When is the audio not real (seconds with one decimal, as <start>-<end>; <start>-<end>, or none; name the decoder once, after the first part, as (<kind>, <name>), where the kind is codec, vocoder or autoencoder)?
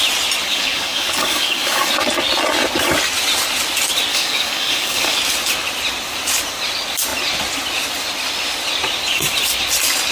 0.5-1.9 (codec, DAC); 4.1-5.2